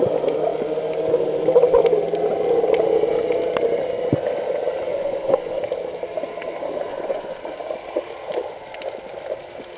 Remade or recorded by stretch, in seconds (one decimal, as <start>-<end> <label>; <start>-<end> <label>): 0.0-4.9 recorded; 4.9-5.6 remade; 5.6-6.9 recorded; 6.9-7.4 remade; 7.4-9.8 recorded